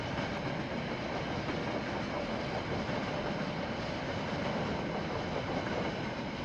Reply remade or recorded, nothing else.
recorded